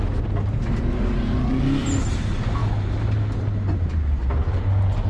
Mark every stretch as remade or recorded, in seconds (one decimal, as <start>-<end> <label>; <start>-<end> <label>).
0.0-5.1 recorded